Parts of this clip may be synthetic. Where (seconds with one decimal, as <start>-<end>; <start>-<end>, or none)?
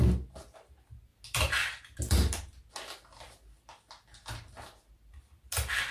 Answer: none